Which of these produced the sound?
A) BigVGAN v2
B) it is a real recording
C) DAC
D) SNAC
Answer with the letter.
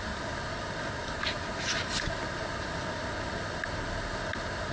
B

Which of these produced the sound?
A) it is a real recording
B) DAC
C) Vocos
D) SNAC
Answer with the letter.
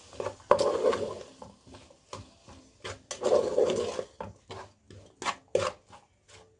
A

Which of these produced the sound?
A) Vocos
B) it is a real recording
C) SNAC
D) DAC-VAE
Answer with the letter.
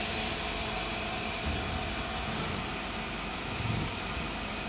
B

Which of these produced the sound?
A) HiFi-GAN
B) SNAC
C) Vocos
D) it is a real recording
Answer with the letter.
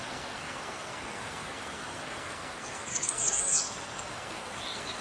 B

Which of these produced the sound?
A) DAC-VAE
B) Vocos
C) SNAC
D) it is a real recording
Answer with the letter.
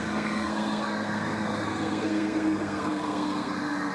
C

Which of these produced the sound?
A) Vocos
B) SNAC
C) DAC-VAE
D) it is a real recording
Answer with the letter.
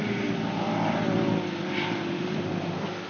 D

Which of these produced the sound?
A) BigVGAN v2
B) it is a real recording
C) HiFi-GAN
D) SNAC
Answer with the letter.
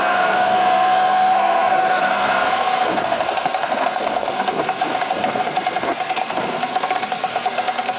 D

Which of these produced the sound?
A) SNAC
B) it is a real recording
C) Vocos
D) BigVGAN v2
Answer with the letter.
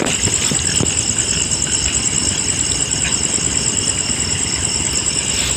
B